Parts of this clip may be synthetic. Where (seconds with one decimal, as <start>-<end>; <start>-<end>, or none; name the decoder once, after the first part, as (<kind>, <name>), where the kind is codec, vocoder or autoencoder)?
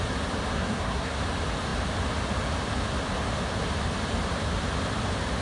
0.5-1.2 (codec, SNAC)